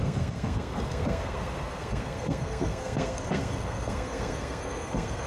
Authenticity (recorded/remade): remade